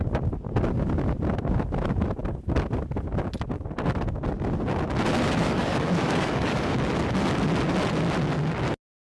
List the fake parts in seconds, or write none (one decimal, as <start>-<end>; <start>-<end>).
5.4-6.9